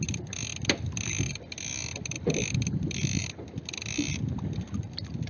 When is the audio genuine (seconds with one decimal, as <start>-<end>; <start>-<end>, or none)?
0.0-5.3